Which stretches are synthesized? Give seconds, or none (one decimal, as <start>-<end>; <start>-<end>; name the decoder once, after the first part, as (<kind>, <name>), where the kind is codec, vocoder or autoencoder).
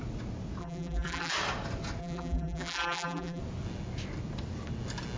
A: 0.6-1.3 (vocoder, BigVGAN v2); 2.0-3.4